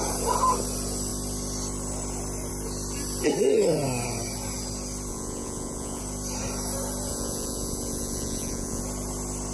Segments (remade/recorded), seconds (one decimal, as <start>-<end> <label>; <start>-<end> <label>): 0.0-5.1 recorded; 5.1-6.0 remade; 6.0-7.1 recorded; 7.1-8.8 remade; 8.8-9.5 recorded

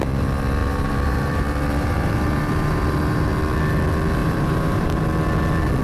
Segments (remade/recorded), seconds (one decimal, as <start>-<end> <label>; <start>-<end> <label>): 0.0-0.6 recorded; 0.6-3.3 remade; 3.3-4.2 recorded; 4.2-5.0 remade; 5.0-5.8 recorded